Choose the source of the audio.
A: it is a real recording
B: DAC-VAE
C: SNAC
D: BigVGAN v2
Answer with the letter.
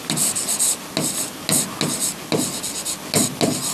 A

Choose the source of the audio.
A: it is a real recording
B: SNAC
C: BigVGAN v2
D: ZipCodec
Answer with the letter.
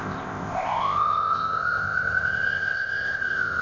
D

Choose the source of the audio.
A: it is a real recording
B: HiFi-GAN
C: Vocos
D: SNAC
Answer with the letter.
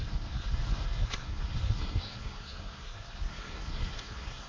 D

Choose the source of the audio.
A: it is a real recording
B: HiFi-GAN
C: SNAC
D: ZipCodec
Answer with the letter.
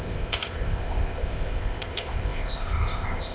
D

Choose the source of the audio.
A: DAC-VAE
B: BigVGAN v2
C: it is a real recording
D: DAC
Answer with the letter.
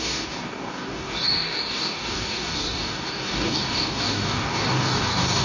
D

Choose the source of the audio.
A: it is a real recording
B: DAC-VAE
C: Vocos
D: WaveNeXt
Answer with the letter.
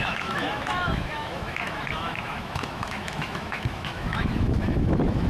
B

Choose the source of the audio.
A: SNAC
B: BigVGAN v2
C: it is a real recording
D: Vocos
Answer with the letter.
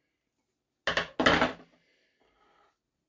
C